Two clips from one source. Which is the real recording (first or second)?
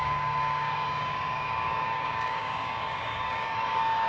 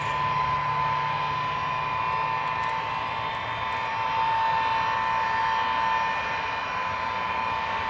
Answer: second